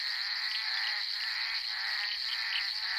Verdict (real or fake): real